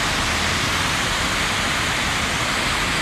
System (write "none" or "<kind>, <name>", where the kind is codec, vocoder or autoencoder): none